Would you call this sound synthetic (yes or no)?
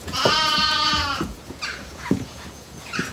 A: yes